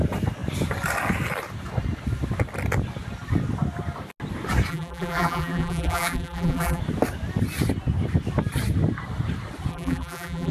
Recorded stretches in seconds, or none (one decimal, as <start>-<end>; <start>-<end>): 0.0-4.7; 6.8-9.7